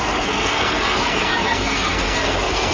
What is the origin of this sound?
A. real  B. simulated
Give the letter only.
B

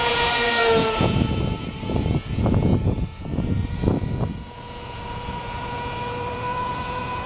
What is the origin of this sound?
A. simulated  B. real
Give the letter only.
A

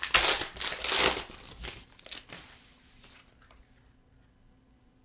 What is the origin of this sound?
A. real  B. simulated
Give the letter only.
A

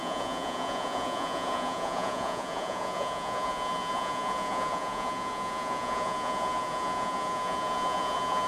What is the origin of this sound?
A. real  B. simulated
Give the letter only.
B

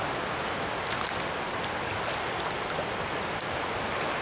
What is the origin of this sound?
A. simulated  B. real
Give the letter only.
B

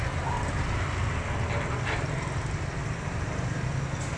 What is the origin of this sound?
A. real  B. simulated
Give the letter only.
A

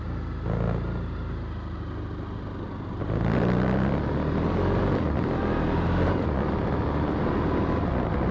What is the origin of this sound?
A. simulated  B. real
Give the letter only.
B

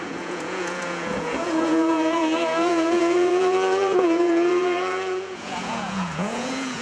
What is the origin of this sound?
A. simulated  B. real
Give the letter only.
A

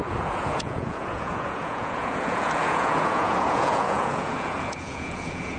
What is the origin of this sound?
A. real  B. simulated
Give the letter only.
B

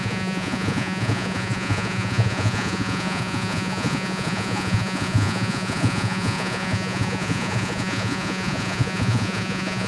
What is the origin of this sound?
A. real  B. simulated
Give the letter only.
B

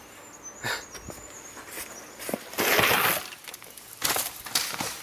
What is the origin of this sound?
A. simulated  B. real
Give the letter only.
B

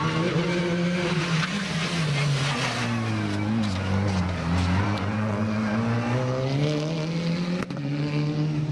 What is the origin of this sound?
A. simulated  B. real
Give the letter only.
B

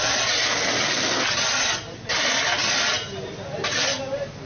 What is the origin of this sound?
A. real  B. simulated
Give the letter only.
A